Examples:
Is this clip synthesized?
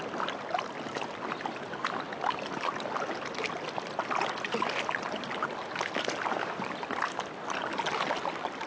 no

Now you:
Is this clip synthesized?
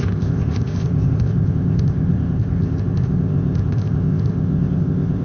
yes